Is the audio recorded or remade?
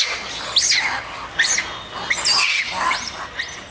recorded